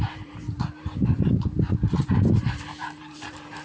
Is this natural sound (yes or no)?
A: no